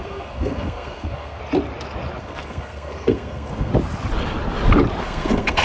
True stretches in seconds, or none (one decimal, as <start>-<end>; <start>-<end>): 1.4-2.2; 3.7-5.0